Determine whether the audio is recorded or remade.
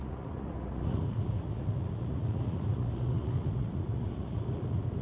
remade